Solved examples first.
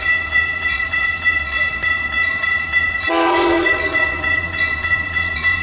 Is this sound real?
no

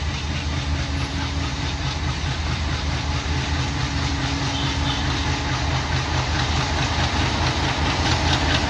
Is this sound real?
yes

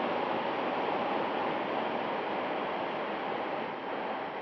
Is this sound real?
yes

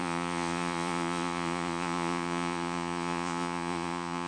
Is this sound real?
no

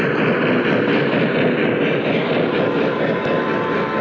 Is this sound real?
yes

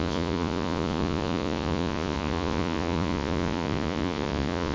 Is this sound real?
no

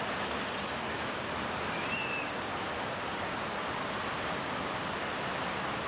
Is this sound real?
yes